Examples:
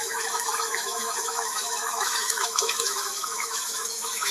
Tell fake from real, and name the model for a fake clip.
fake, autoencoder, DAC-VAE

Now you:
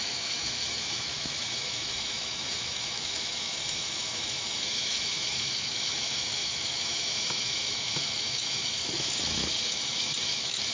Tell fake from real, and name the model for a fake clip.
fake, autoencoder, DAC-VAE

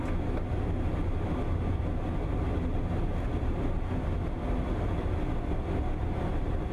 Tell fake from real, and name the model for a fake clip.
real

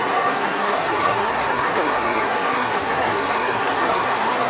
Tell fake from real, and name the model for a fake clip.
fake, codec, SNAC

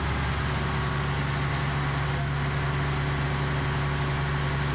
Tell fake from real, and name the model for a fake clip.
real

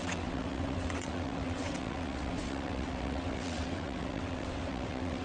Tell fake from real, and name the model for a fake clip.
fake, vocoder, WaveNeXt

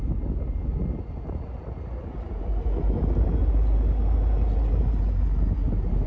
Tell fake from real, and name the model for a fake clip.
real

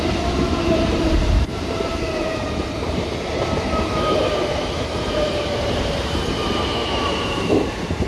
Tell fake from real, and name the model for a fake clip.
fake, vocoder, BigVGAN v2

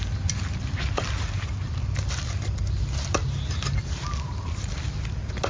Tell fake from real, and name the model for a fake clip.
real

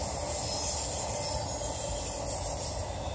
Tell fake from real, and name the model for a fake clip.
real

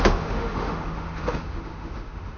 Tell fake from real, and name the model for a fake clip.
fake, autoencoder, DAC-VAE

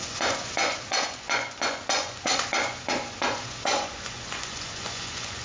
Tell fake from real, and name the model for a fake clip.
fake, vocoder, Vocos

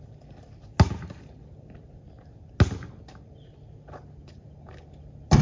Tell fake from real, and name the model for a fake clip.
real